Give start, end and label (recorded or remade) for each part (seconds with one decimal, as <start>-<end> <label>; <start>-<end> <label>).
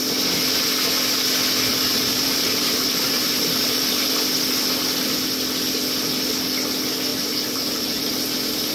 0.0-1.7 recorded; 1.7-4.1 remade; 4.1-7.1 recorded; 7.1-8.1 remade; 8.1-8.7 recorded